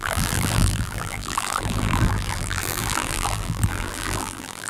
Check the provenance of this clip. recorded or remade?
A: remade